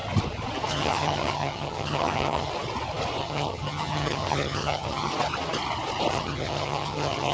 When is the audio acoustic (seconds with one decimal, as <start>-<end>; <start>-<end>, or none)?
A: 0.0-0.7; 2.5-3.2; 5.1-6.1